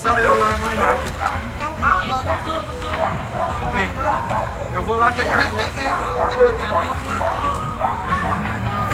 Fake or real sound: fake